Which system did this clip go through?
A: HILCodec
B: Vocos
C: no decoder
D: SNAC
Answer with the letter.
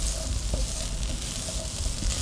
C